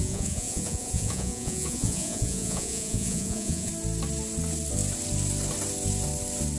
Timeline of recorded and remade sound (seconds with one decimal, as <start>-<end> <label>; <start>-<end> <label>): 0.0-3.7 remade; 3.7-6.6 recorded